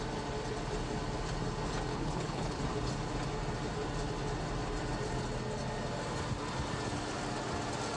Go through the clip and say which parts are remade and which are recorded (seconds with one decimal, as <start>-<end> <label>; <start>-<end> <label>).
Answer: 0.0-1.9 recorded; 1.9-2.6 remade; 2.6-8.0 recorded